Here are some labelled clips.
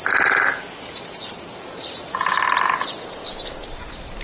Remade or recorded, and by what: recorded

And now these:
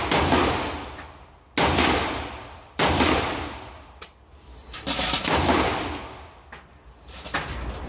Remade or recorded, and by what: recorded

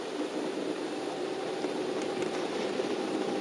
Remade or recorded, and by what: recorded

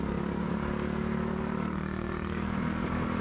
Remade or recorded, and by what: remade, codec, DAC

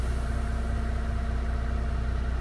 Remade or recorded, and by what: recorded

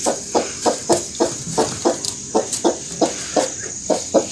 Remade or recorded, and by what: recorded